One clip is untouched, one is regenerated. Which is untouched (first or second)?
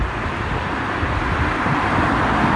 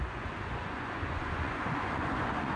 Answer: first